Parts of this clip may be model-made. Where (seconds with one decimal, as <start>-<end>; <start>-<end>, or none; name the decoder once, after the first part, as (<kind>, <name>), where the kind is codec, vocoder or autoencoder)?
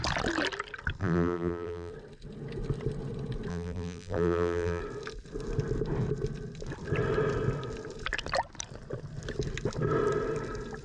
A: 1.0-1.9 (vocoder, BigVGAN v2); 3.5-4.8